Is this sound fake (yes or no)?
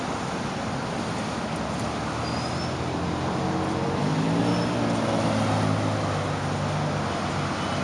no